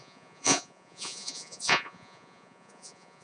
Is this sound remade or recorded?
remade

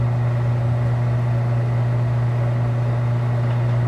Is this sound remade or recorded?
recorded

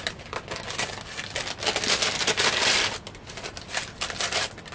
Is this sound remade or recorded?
recorded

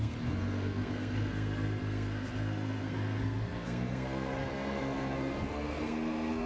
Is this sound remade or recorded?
remade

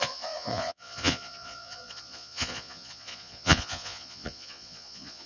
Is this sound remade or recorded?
remade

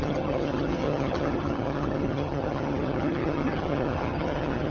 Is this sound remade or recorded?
remade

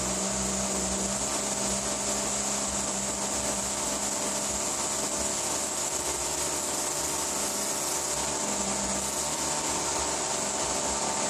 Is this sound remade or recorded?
recorded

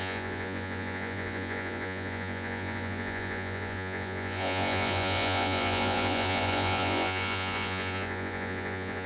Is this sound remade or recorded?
remade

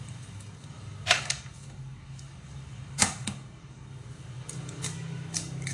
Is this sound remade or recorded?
remade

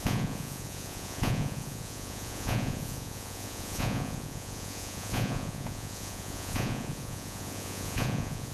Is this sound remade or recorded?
remade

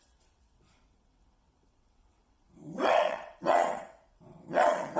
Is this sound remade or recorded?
remade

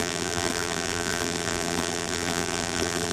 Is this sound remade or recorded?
remade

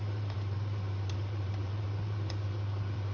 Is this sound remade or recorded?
remade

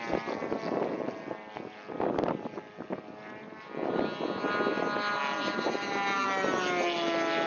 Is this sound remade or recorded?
recorded